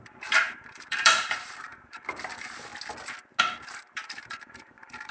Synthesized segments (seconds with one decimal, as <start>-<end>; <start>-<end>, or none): 0.0-2.7; 3.4-5.1